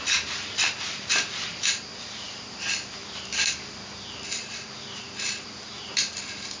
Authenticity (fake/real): fake